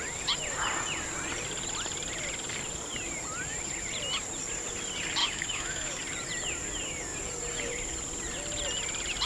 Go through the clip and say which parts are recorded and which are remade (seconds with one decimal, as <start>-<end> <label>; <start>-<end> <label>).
0.0-5.2 recorded; 5.2-6.0 remade; 6.0-9.3 recorded